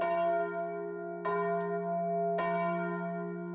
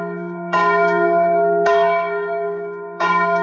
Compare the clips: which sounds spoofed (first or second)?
second